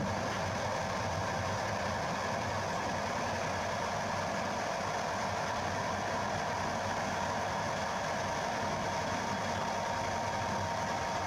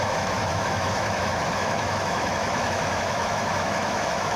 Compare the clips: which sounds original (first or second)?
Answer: first